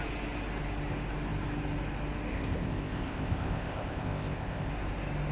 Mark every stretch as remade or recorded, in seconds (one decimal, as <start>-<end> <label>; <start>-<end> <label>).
0.0-2.3 recorded; 2.3-4.7 remade; 4.7-5.3 recorded